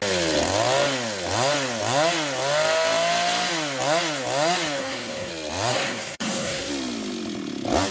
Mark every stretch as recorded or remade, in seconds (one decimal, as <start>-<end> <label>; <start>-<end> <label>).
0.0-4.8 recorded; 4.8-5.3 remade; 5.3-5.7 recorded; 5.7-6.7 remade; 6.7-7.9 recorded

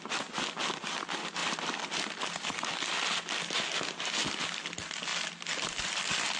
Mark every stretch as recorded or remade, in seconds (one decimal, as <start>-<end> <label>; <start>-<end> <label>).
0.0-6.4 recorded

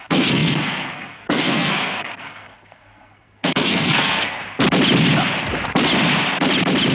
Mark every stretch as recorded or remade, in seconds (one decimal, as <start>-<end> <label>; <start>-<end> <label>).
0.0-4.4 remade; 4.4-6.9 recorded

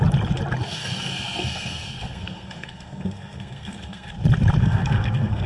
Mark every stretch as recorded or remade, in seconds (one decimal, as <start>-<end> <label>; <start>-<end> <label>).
0.0-0.8 recorded; 0.8-4.1 remade; 4.1-4.6 recorded; 4.6-5.5 remade

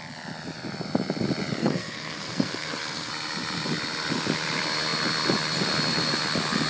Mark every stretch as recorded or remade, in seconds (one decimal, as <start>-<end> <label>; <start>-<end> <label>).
0.0-1.6 recorded; 1.6-3.1 remade; 3.1-6.7 recorded

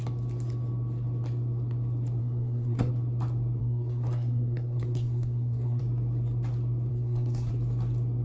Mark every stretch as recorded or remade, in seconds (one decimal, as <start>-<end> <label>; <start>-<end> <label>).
0.0-2.2 recorded; 2.2-2.9 remade; 2.9-3.6 recorded; 3.6-5.8 remade; 5.8-6.9 recorded; 6.9-7.5 remade; 7.5-8.2 recorded

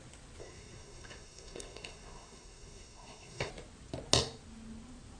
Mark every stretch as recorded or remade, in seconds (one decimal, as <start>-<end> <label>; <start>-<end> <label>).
0.0-0.4 recorded; 0.4-3.5 remade; 3.5-5.2 recorded

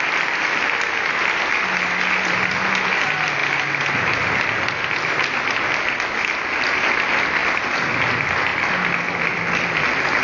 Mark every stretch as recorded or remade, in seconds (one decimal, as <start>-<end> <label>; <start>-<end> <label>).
0.0-10.2 recorded